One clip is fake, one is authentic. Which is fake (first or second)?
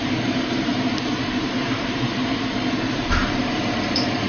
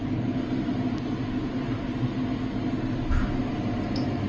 first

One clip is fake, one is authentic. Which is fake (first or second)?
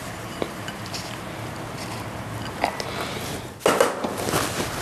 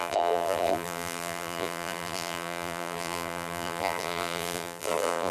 second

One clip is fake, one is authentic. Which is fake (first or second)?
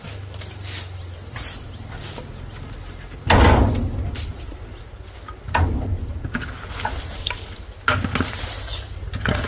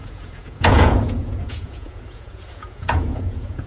second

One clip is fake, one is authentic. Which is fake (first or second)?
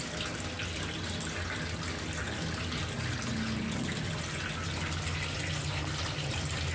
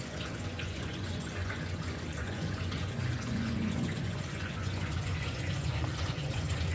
second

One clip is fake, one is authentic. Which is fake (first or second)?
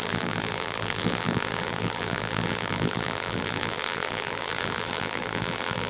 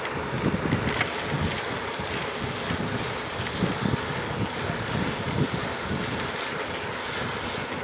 first